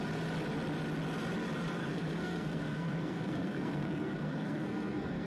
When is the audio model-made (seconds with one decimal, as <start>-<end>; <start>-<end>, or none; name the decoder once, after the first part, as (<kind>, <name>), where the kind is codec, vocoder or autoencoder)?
1.8-5.3 (codec, SNAC)